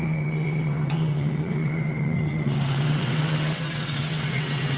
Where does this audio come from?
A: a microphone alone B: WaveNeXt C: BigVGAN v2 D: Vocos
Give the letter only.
B